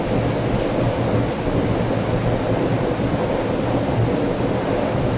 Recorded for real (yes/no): yes